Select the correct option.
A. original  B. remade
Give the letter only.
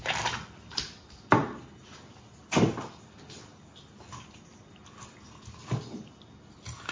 A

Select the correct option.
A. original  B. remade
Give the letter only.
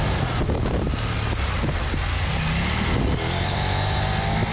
A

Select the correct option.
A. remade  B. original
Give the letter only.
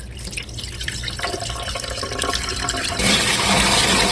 A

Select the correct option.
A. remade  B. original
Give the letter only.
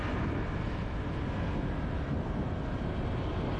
B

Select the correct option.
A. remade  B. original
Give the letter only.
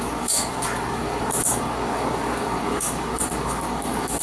A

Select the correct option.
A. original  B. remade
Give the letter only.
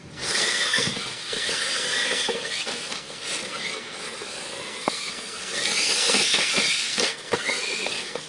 B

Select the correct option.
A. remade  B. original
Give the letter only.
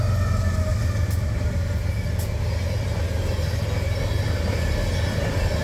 B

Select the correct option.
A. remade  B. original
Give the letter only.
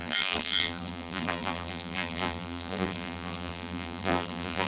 A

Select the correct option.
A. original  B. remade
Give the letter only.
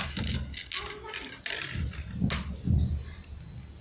A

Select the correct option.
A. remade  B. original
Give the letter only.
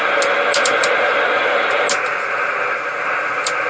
B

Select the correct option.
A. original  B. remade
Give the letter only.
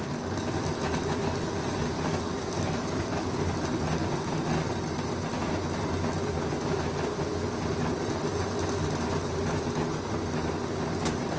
A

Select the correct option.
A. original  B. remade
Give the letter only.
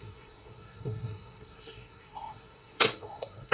B